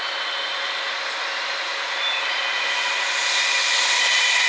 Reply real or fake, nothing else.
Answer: real